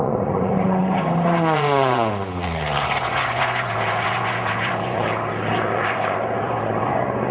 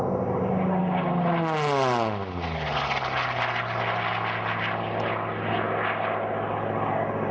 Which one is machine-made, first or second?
first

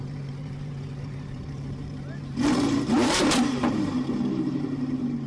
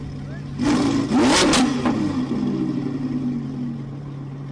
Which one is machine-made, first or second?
first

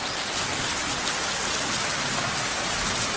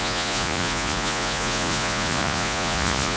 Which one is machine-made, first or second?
second